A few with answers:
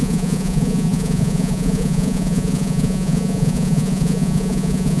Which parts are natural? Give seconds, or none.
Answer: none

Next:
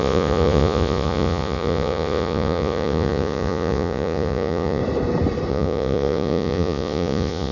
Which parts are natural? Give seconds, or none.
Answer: 4.8-5.5

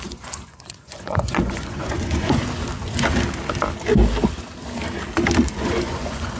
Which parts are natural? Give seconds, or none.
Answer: 2.4-5.4

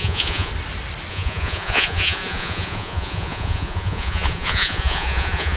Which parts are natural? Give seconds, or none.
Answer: 0.5-1.1

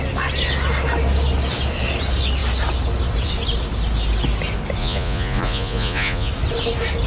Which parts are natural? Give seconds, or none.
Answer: 0.0-4.8; 6.3-7.1

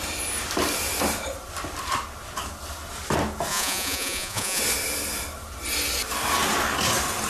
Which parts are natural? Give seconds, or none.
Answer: 0.0-3.5; 4.6-7.3

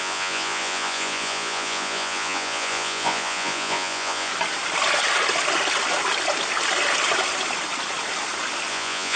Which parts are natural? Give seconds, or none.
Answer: 4.3-8.7